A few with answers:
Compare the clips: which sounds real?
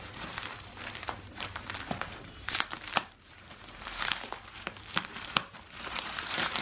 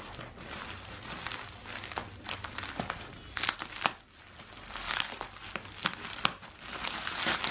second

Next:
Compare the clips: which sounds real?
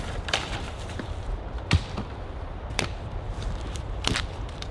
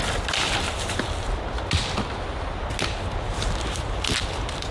second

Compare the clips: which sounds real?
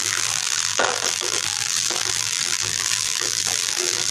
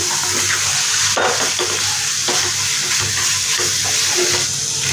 second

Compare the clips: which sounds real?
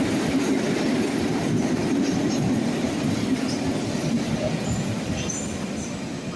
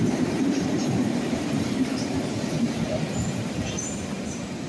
first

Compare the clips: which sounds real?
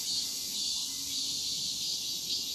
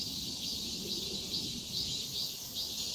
first